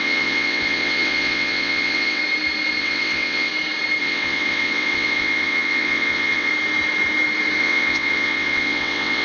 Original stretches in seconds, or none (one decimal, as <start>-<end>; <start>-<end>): 2.2-2.8; 3.5-4.0; 6.5-7.6